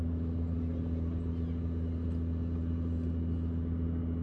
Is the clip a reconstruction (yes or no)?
no